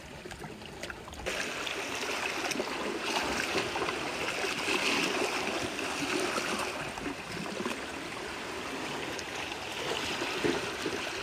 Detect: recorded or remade recorded